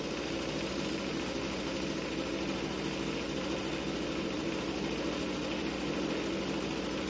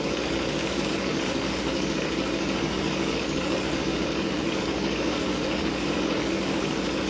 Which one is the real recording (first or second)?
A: first